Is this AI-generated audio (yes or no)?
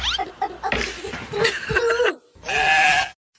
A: no